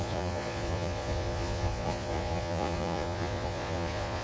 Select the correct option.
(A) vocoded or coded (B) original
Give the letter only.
A